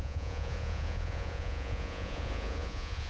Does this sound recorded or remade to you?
remade